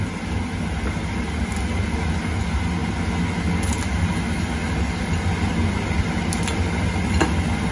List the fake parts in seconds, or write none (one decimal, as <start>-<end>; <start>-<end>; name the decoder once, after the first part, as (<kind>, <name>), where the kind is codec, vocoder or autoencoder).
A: none